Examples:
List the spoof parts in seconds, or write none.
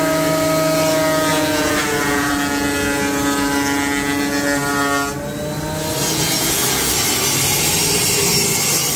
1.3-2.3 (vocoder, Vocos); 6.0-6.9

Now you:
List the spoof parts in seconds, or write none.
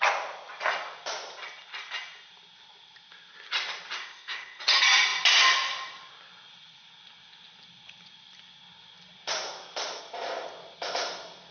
4.0-4.6 (codec, ZipCodec)